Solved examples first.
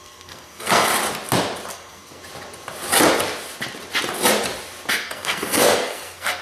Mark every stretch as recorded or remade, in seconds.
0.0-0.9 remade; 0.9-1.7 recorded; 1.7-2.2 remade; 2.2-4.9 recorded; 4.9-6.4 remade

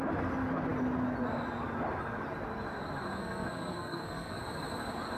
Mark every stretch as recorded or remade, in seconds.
0.0-3.2 recorded; 3.2-4.4 remade; 4.4-5.2 recorded